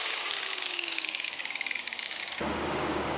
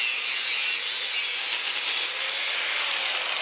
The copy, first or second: first